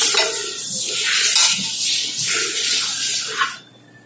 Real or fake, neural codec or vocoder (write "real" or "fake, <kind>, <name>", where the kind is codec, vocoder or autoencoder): real